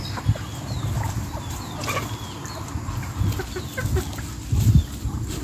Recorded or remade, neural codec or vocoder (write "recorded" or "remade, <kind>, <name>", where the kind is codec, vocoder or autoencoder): recorded